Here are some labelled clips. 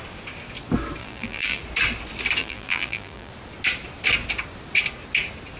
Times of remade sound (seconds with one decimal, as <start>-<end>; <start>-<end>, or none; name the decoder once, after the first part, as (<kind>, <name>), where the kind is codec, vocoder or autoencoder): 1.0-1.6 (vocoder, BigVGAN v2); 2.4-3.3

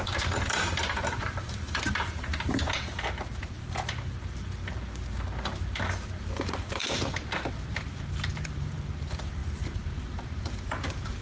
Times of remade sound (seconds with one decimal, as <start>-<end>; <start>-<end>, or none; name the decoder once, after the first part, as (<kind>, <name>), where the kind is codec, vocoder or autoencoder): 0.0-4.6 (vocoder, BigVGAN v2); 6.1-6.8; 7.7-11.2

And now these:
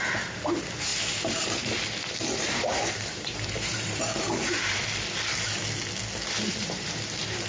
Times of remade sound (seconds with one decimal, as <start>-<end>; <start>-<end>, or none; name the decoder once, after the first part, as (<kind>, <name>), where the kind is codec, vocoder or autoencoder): 0.0-4.8 (vocoder, BigVGAN v2); 6.5-7.5